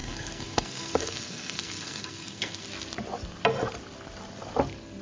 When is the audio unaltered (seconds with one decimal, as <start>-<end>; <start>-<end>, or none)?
2.7-5.0